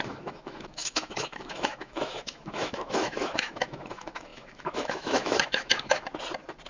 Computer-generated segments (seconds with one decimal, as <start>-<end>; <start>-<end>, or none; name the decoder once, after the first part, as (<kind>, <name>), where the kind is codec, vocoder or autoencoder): 0.0-6.1 (autoencoder, DAC-VAE)